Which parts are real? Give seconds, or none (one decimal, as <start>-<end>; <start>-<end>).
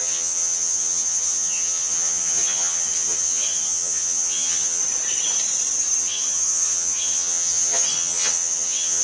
4.8-6.0